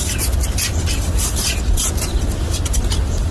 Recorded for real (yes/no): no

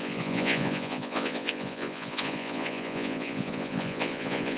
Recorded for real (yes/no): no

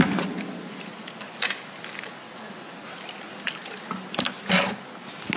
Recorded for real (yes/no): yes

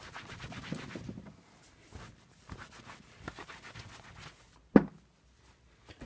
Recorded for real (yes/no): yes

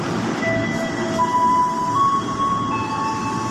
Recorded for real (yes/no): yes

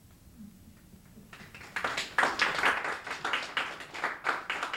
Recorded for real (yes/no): yes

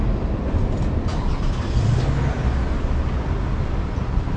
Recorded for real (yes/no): yes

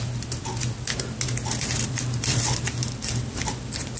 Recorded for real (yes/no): yes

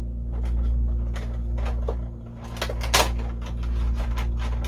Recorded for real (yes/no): yes